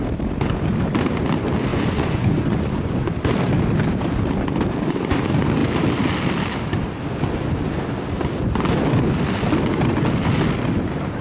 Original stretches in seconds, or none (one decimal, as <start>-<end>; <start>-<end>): 0.0-1.7; 3.1-11.2